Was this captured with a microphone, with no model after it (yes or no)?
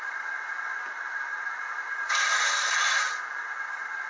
yes